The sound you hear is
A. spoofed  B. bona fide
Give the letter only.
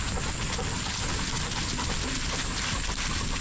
B